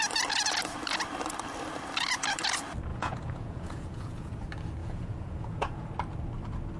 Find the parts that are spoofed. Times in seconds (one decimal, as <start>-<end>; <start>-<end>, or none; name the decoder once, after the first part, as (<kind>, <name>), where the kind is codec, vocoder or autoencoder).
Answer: 2.9-4.3 (vocoder, Vocos); 4.8-5.9